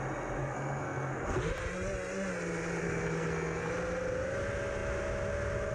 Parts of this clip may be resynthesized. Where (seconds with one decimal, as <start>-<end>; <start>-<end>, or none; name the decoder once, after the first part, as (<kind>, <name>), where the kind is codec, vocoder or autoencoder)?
0.4-1.4 (codec, SNAC); 2.8-3.7